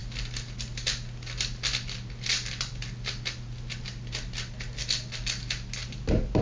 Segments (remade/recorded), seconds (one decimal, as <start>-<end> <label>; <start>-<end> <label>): 0.0-6.4 recorded